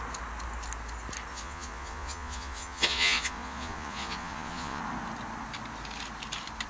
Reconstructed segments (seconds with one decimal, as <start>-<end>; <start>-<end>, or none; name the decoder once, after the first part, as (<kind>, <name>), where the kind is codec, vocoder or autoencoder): 1.3-4.8 (vocoder, Vocos)